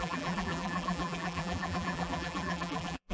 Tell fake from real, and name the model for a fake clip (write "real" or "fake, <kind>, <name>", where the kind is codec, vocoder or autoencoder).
fake, vocoder, BigVGAN v2